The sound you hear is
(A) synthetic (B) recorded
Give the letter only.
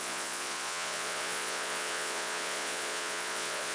A